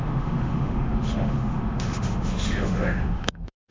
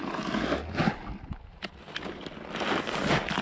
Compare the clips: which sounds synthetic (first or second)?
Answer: first